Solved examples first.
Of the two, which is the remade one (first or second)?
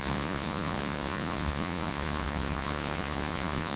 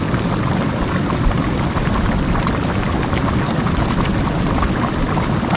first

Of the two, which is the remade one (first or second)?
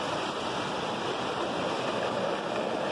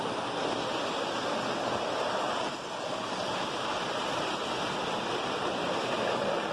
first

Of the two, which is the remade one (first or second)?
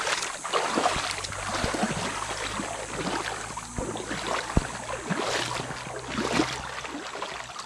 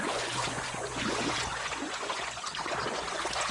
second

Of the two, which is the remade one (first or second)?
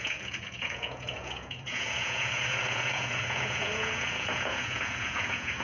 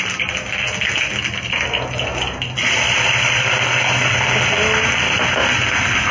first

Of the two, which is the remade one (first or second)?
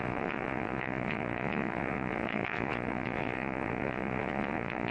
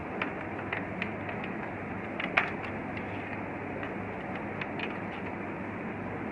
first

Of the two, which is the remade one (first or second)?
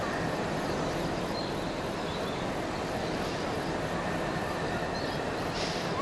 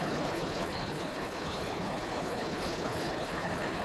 second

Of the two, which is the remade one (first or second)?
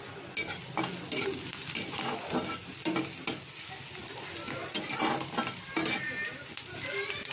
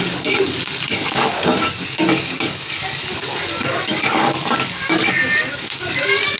second